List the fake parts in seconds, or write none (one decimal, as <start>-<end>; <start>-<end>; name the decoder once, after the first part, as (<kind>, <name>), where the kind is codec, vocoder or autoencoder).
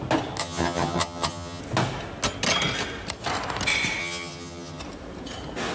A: 0.4-1.6 (vocoder, HiFi-GAN); 4.0-4.8